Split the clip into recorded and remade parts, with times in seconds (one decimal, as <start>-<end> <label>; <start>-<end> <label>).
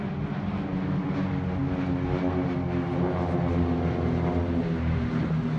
0.0-5.6 recorded